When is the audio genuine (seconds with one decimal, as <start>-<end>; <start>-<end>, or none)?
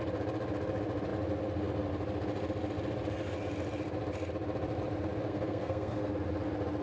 0.0-5.3; 6.1-6.8